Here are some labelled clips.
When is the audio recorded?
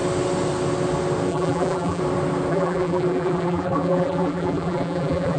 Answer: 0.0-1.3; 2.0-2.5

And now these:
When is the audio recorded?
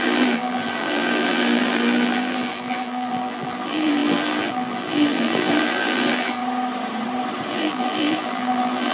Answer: 6.4-7.5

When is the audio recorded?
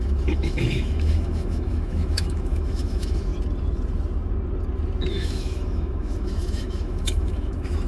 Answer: 3.3-5.1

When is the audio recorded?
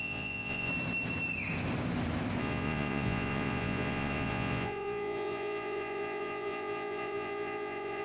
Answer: 0.7-2.4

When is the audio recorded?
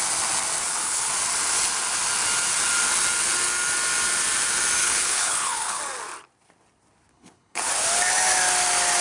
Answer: 0.0-0.6; 1.1-4.8; 5.8-7.1; 7.7-9.0